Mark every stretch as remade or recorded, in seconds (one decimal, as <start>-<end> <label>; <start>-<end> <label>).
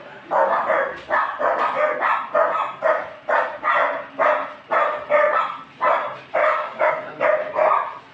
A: 0.0-6.4 recorded; 6.4-6.9 remade; 6.9-8.1 recorded